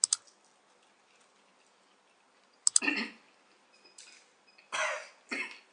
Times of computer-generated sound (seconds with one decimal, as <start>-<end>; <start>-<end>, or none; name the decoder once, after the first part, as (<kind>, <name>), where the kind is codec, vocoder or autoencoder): none